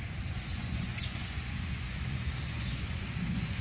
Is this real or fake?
fake